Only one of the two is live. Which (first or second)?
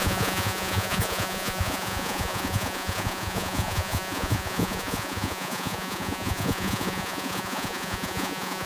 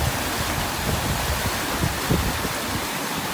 second